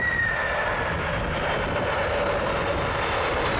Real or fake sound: real